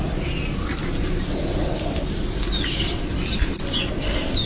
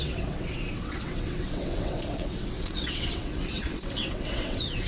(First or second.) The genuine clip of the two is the first